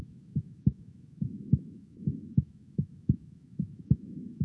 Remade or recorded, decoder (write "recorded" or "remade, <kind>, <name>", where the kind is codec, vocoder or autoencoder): remade, autoencoder, DAC-VAE